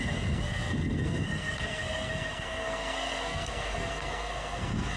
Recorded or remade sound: remade